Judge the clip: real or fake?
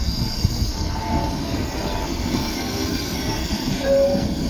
fake